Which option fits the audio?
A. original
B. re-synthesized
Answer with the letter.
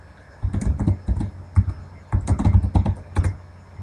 A